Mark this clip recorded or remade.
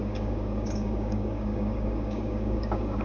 remade